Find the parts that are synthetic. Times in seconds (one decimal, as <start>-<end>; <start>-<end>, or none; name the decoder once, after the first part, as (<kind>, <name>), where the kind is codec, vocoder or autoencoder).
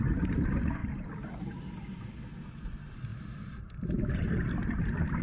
0.8-1.6 (vocoder, BigVGAN v2); 3.1-5.2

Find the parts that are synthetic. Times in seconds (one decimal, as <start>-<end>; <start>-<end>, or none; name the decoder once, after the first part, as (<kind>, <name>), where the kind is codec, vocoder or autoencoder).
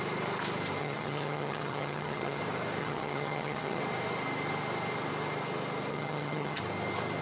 0.8-2.4 (vocoder, HiFi-GAN); 2.8-3.8; 5.9-6.6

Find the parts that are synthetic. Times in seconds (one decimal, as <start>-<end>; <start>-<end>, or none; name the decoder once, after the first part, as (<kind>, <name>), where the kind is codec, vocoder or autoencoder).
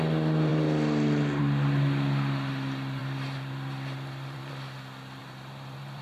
3.0-4.5 (vocoder, BigVGAN v2); 5.2-6.0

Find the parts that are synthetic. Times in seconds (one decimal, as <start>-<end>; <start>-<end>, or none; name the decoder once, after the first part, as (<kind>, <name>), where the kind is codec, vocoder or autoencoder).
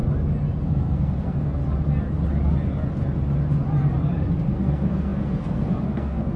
0.6-1.6 (codec, SNAC); 4.5-6.4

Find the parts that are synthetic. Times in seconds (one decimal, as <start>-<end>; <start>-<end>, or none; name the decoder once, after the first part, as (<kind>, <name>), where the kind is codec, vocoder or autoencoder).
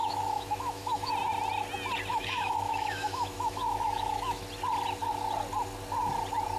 0.0-1.1 (autoencoder, DAC-VAE); 2.1-4.4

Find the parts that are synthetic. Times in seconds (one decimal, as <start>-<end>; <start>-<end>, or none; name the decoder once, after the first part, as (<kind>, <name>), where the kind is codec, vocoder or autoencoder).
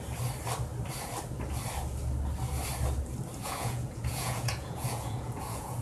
3.4-5.8 (vocoder, Vocos)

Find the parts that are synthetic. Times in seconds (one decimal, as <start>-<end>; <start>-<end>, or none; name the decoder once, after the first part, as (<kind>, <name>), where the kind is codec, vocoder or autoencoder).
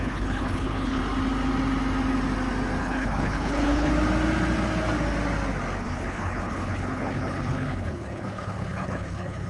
0.0-1.0 (codec, HILCodec); 2.8-3.9; 5.8-9.5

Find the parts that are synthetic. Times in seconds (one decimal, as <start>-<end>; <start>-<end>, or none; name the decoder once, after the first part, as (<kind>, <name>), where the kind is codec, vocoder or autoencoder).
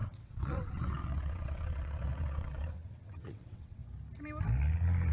0.0-3.8 (vocoder, WaveNeXt)